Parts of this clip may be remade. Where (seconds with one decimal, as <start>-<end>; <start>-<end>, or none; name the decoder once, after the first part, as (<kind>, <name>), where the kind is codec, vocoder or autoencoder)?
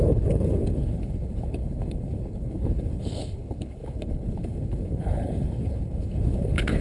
0.0-6.8 (codec, HILCodec)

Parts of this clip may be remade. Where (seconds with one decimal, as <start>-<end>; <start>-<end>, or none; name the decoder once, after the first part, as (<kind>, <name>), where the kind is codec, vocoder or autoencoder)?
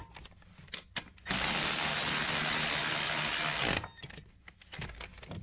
none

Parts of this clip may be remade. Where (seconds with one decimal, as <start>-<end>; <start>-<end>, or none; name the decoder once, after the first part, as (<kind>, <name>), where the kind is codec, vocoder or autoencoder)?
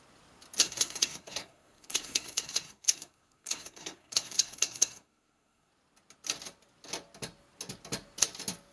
0.6-5.7 (codec, SNAC)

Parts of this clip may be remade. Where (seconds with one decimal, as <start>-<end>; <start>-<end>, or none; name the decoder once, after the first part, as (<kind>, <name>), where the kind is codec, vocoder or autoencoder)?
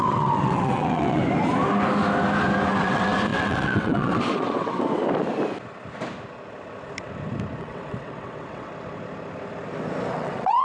0.0-1.2 (vocoder, WaveNeXt); 2.7-5.0; 7.6-8.7; 10.1-10.6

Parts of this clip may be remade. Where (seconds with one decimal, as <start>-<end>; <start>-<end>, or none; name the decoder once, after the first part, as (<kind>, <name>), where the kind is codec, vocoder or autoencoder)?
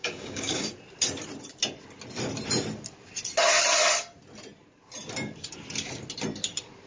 0.0-0.7 (codec, DAC)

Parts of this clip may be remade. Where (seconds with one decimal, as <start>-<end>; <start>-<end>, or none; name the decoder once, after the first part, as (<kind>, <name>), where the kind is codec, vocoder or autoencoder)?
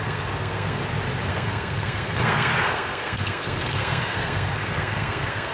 0.0-0.8 (codec, SNAC); 1.3-5.5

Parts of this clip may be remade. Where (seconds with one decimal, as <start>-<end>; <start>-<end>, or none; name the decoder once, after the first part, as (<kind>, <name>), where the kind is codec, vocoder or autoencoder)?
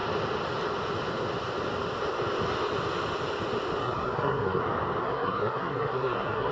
3.8-4.6 (codec, SNAC); 5.0-6.5